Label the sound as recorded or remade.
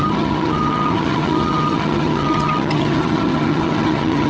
remade